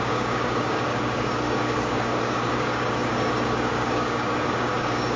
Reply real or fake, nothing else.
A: fake